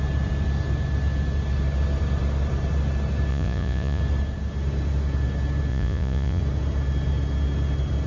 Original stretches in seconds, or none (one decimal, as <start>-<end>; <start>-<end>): 0.0-3.3; 4.0-5.7; 6.4-8.1